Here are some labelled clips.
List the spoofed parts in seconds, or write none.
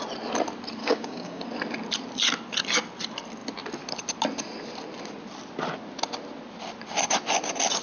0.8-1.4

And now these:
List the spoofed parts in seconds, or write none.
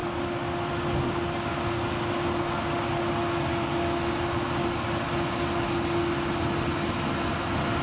none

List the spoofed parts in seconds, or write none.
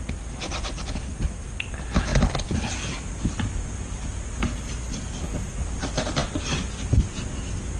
none